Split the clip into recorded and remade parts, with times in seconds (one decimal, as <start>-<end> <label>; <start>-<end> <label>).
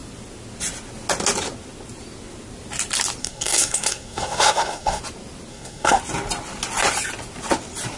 0.0-3.2 recorded; 3.2-5.0 remade; 5.0-5.5 recorded; 5.5-6.0 remade; 6.0-8.0 recorded